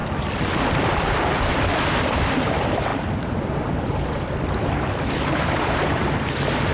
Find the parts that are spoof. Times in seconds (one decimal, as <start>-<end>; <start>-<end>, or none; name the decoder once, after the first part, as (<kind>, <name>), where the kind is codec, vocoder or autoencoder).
0.8-2.9 (vocoder, BigVGAN v2); 3.6-6.7